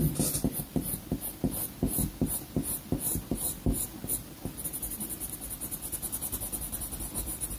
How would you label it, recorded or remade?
recorded